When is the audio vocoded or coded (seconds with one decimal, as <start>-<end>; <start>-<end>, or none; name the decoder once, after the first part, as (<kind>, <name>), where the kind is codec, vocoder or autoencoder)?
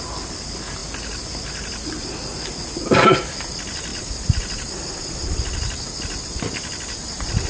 none